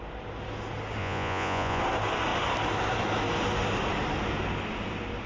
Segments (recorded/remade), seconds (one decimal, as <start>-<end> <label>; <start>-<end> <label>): 0.0-1.0 recorded; 1.0-1.8 remade; 1.8-5.3 recorded

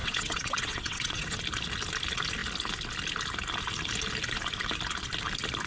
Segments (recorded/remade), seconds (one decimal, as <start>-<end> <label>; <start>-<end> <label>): 0.0-1.4 remade; 1.4-5.7 recorded

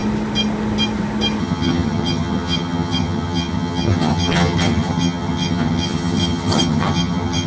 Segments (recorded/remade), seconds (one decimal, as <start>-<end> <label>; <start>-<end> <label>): 0.0-1.4 recorded; 1.4-7.5 remade

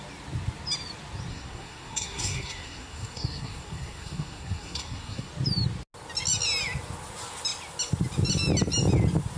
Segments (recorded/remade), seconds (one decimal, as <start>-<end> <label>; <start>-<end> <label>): 0.0-1.3 recorded; 1.3-5.3 remade; 5.3-9.4 recorded

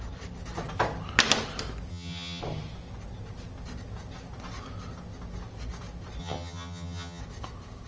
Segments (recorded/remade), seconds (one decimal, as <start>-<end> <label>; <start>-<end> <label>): 0.0-1.9 recorded; 1.9-2.4 remade; 2.4-6.2 recorded; 6.2-7.2 remade; 7.2-7.9 recorded